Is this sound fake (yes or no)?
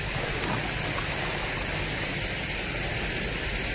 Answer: no